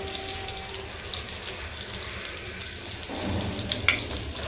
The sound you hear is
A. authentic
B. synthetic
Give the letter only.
A